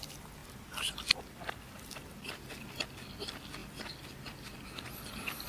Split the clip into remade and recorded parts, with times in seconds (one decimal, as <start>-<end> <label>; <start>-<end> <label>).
0.0-5.5 recorded